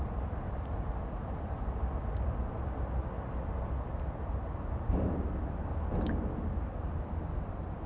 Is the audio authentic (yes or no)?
yes